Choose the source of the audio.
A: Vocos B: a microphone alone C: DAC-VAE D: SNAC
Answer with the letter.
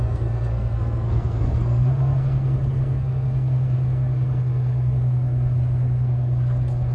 D